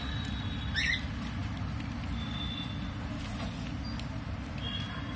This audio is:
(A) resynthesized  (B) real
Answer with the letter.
B